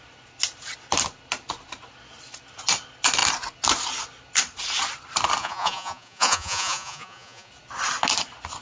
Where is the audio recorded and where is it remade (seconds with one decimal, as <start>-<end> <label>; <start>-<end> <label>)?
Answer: 0.0-5.4 recorded; 5.4-7.5 remade; 7.5-8.6 recorded